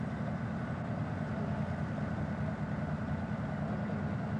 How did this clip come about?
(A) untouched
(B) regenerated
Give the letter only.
A